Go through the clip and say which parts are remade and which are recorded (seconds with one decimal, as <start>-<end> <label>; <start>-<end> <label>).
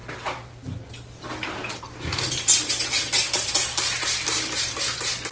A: 0.0-5.3 recorded